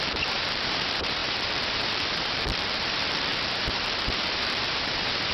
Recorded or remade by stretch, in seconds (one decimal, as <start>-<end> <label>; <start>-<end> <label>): 0.0-5.3 remade

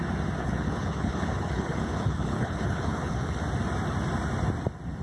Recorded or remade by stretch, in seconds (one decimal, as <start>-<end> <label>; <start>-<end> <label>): 0.0-0.4 recorded; 0.4-3.4 remade; 3.4-5.0 recorded

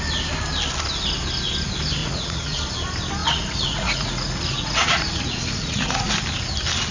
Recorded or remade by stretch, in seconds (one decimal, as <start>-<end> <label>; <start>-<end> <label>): 0.0-2.0 recorded; 2.0-2.6 remade; 2.6-3.2 recorded; 3.2-6.1 remade; 6.1-6.9 recorded

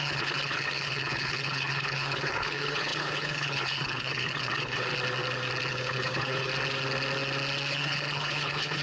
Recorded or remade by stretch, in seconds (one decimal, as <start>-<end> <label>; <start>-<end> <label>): 0.0-4.9 remade; 4.9-5.7 recorded; 5.7-6.5 remade; 6.5-7.7 recorded; 7.7-8.8 remade